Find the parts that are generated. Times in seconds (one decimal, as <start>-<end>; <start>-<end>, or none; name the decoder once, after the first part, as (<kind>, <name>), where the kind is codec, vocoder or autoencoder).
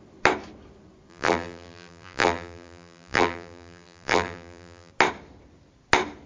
1.1-4.9 (vocoder, BigVGAN v2)